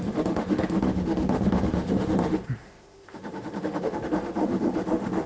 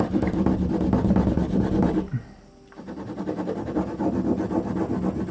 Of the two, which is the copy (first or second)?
first